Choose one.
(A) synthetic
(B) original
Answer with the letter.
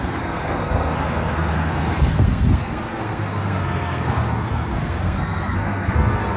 A